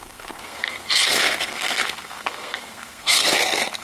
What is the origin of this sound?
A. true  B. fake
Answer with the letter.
B